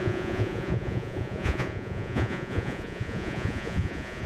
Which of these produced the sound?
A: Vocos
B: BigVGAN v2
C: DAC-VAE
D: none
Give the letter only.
A